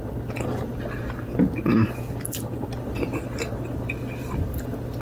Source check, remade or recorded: remade